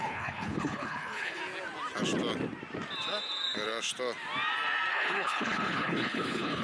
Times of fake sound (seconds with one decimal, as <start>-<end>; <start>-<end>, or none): 0.0-1.4; 4.9-6.6